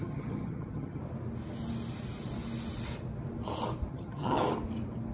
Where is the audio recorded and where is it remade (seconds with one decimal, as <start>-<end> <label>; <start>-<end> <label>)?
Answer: 0.0-1.0 remade; 1.0-3.9 recorded; 3.9-4.4 remade; 4.4-5.1 recorded

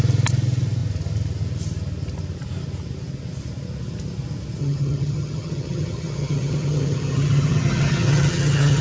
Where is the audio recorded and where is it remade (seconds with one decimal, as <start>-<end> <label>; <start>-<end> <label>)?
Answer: 0.0-4.6 recorded; 4.6-8.8 remade